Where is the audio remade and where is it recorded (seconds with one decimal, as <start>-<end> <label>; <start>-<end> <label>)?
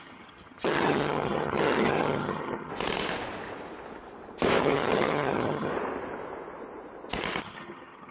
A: 0.0-2.7 remade; 2.7-4.6 recorded; 4.6-5.7 remade; 5.7-7.4 recorded; 7.4-8.1 remade